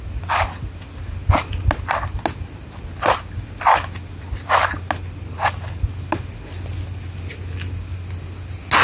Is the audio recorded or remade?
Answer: recorded